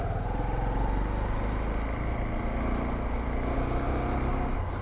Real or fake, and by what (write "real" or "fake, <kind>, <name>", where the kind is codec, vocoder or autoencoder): real